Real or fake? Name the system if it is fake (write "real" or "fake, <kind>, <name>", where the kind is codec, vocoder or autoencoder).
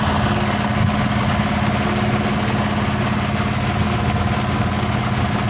real